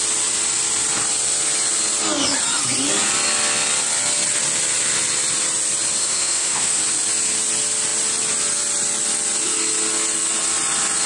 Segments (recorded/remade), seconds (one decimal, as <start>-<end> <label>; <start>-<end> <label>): 0.0-6.0 recorded; 6.0-6.8 remade; 6.8-11.1 recorded